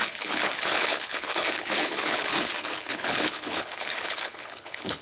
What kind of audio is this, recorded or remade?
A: remade